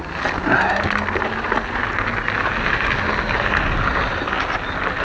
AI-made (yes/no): no